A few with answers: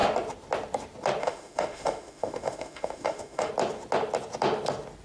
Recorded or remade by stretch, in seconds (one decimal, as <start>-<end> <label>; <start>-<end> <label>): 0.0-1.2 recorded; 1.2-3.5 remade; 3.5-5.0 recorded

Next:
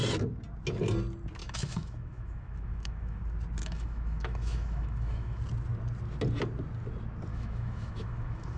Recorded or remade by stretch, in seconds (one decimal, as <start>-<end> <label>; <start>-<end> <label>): 0.0-1.4 recorded; 1.4-3.2 remade; 3.2-3.6 recorded; 3.6-5.4 remade; 5.4-7.3 recorded; 7.3-8.6 remade

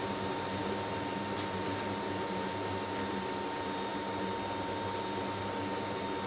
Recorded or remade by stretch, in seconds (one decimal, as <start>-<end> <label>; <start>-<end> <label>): 0.0-6.3 recorded

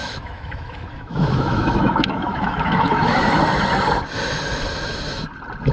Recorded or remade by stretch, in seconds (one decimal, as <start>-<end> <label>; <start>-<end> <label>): 0.0-3.4 remade; 3.4-5.7 recorded